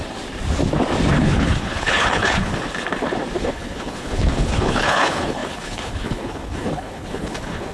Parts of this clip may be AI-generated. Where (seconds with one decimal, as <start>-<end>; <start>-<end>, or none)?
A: 1.2-2.5; 3.4-7.7